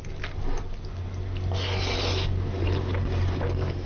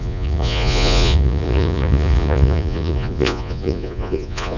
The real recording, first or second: first